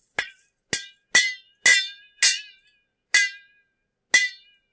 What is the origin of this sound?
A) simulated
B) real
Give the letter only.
B